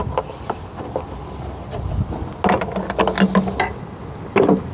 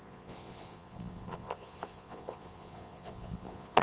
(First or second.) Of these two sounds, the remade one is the second